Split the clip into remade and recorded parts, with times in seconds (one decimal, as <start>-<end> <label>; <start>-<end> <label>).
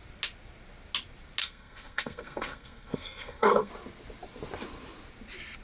0.0-1.4 recorded; 1.4-3.7 remade; 3.7-5.6 recorded